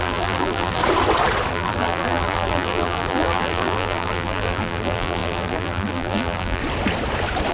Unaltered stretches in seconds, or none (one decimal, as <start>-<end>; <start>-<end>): 0.8-1.5; 6.6-7.5